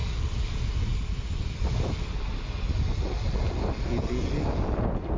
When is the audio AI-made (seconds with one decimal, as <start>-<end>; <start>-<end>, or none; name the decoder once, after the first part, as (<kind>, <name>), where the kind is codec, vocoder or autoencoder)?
none